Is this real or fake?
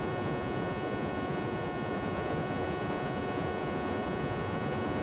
fake